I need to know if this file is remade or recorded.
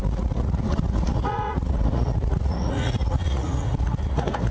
remade